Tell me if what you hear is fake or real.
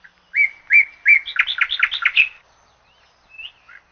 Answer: real